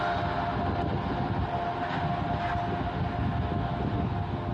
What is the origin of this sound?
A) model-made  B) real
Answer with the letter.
B